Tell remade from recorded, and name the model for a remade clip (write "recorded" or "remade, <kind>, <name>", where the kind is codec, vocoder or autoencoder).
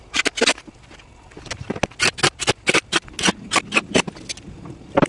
recorded